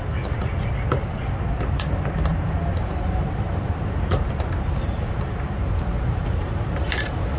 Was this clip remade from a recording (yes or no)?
yes